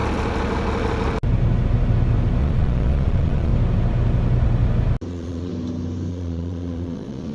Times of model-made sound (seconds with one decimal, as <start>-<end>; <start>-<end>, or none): 2.4-3.5; 5.1-5.5; 6.1-7.3